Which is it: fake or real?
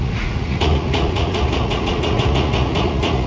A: fake